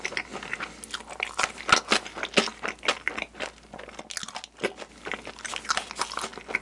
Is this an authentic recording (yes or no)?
yes